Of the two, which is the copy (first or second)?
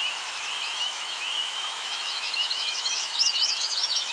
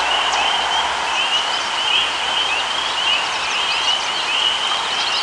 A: first